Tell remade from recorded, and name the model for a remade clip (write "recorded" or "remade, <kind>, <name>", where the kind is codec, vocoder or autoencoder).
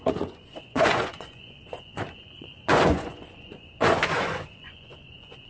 remade, vocoder, Vocos